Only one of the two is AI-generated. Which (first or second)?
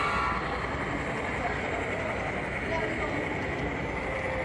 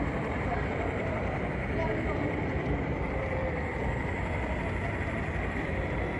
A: second